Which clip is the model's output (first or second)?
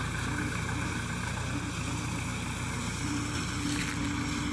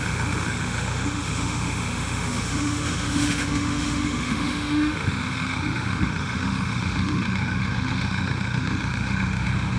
second